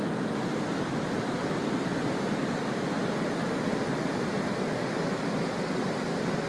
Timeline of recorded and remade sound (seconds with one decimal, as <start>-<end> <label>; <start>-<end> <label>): 0.0-6.5 recorded